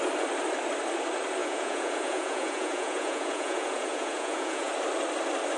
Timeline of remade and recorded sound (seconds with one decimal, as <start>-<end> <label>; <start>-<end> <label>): 0.0-1.4 recorded; 1.4-4.7 remade; 4.7-5.6 recorded